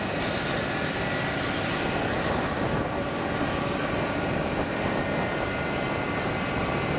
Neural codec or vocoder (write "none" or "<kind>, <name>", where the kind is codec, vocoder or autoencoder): none